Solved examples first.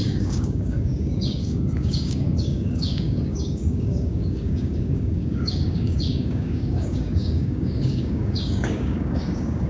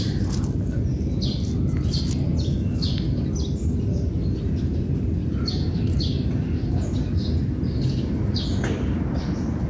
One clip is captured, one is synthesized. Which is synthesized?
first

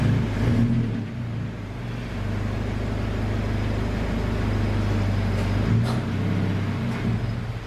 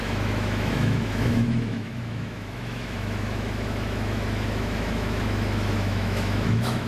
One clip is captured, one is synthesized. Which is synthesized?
second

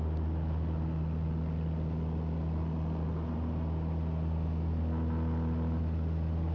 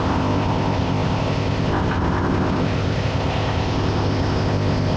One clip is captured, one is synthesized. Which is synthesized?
second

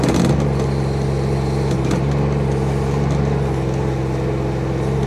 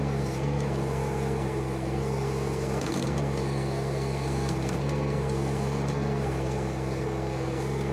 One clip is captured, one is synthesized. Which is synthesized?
second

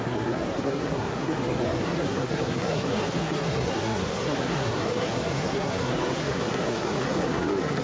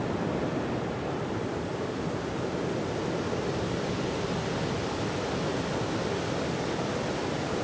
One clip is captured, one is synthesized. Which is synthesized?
first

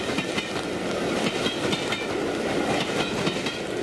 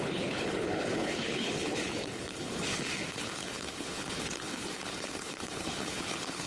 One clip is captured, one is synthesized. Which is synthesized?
second